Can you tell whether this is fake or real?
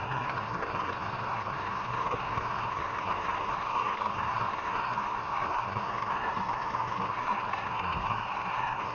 fake